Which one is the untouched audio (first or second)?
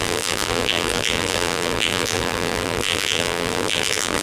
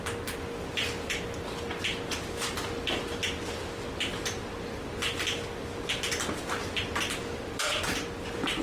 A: second